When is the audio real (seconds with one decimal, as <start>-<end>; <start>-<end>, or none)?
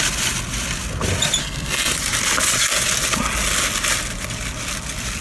0.0-1.4; 1.9-5.2